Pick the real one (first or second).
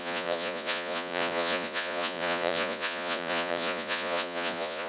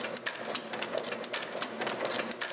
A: second